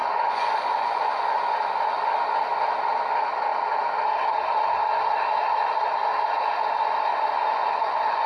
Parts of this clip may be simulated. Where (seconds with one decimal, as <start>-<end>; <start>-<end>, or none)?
0.0-1.4; 7.1-8.3